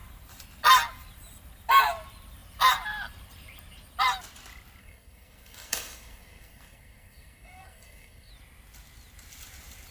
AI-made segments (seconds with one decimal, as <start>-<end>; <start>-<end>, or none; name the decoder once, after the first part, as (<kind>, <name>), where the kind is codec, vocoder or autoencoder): 4.8-8.3 (codec, SNAC)